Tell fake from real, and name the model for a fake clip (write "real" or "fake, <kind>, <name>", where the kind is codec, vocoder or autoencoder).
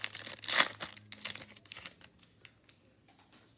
real